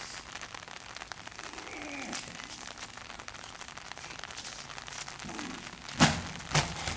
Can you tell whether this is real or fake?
real